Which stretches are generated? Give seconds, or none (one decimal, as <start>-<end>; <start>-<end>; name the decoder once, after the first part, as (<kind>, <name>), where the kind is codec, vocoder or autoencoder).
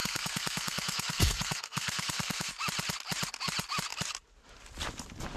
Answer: 0.0-2.5 (codec, SNAC)